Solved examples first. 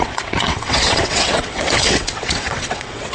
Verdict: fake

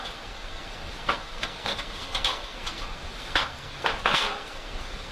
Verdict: fake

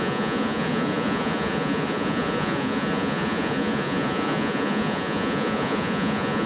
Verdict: fake